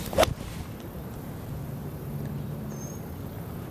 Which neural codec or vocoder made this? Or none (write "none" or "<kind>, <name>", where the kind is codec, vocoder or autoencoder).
none